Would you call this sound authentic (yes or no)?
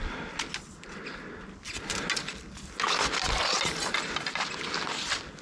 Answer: yes